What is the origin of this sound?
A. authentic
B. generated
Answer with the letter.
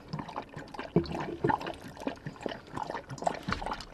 A